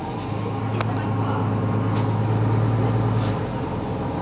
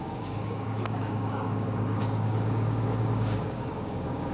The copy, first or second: second